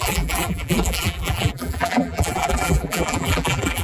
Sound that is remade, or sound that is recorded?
remade